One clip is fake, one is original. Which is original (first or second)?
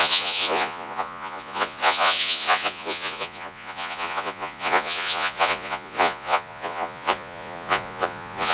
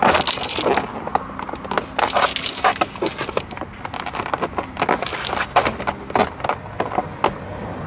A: second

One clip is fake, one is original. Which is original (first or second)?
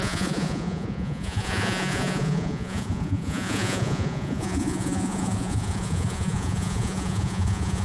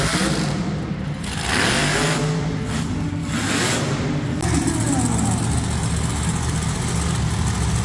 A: second